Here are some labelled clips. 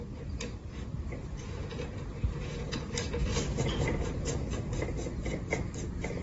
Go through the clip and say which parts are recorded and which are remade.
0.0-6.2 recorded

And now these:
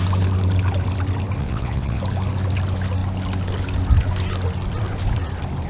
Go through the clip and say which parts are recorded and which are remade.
0.0-1.4 recorded; 1.4-2.0 remade; 2.0-5.7 recorded